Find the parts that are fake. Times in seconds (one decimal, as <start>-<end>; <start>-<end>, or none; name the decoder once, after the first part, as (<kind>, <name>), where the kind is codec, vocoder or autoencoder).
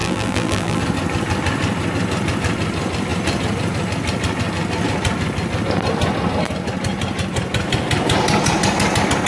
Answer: 0.0-0.8 (vocoder, BigVGAN v2)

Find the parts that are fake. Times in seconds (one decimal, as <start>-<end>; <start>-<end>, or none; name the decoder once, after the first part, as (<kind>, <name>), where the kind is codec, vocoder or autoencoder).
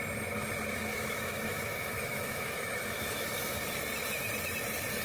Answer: 0.9-3.6 (autoencoder, DAC-VAE)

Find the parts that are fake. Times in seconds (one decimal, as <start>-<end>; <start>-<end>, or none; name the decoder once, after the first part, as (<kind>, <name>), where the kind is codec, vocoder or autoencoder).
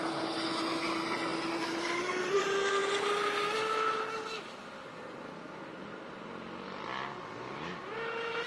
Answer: none